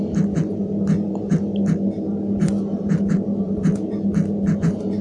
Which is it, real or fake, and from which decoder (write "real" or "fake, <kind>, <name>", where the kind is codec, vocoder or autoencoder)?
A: real